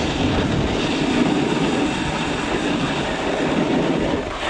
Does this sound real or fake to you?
real